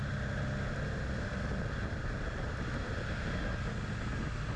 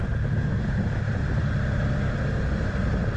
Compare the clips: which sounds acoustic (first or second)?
first